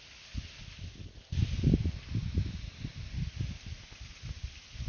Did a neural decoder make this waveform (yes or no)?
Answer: no